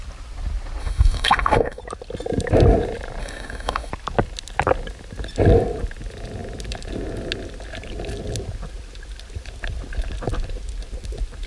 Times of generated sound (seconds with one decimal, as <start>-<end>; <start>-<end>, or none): 0.8-1.8; 3.2-3.9